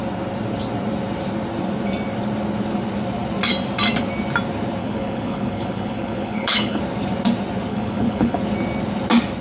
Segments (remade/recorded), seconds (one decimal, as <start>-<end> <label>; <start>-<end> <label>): 0.0-4.8 recorded; 4.8-6.8 remade; 6.8-7.7 recorded; 7.7-8.4 remade; 8.4-9.4 recorded